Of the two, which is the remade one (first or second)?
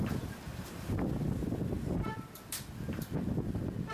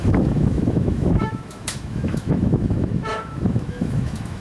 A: second